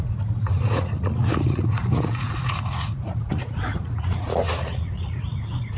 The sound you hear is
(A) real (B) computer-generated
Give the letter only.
B